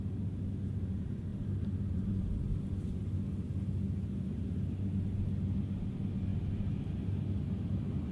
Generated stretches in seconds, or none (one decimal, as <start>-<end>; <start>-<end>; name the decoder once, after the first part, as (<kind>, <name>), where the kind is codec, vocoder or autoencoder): 1.3-2.3 (vocoder, BigVGAN v2)